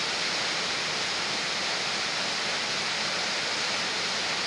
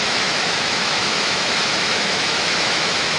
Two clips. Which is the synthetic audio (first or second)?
second